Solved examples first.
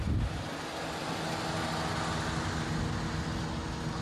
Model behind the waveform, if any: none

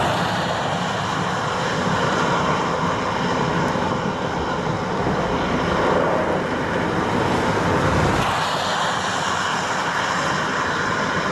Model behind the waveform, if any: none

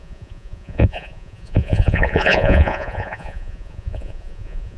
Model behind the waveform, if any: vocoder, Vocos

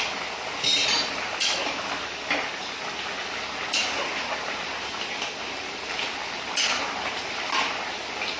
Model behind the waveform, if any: none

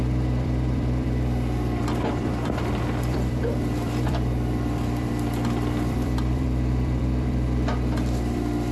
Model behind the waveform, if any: vocoder, BigVGAN v2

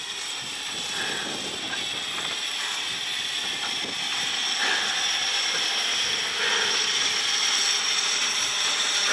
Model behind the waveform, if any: none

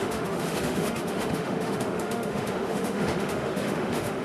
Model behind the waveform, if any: autoencoder, DAC-VAE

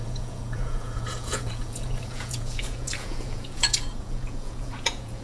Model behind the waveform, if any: vocoder, Vocos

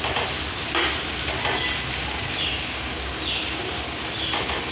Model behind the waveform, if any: none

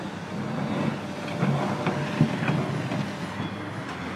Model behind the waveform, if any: none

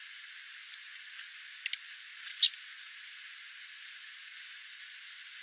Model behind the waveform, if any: none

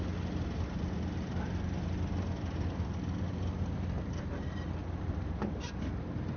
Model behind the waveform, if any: none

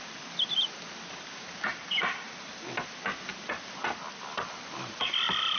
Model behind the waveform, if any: none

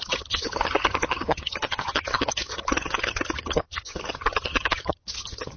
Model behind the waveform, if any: vocoder, HiFi-GAN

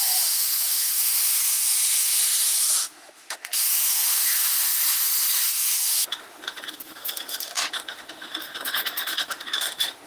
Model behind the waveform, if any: autoencoder, DAC-VAE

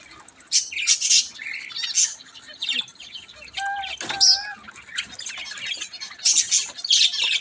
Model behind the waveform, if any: none